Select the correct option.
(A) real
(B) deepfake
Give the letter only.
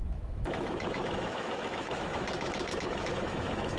B